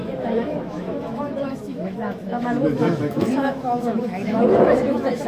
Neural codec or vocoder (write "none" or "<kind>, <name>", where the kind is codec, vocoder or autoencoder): autoencoder, DAC-VAE